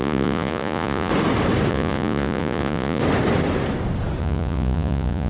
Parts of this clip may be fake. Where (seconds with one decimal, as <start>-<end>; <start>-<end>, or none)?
0.0-1.1; 1.7-3.0; 4.2-5.3